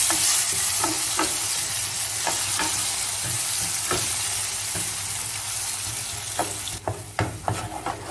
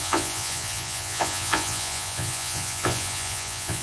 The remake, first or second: second